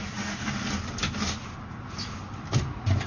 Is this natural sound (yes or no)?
yes